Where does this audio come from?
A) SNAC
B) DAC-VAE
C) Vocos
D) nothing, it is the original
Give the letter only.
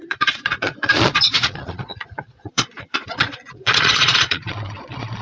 C